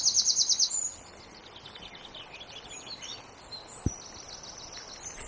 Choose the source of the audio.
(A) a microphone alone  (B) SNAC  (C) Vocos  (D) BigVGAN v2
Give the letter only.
A